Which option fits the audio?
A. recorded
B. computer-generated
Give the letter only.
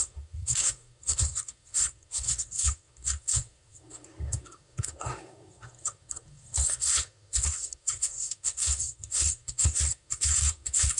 B